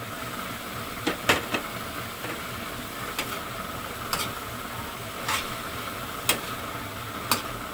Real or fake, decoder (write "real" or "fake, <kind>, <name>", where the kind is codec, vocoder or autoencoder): real